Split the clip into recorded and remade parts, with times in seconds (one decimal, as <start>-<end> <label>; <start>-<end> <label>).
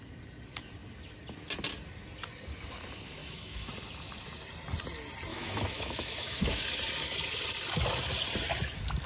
0.0-3.2 recorded; 3.2-3.7 remade; 3.7-5.3 recorded; 5.3-6.6 remade; 6.6-9.1 recorded